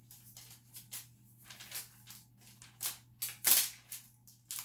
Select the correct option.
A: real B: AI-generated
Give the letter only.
A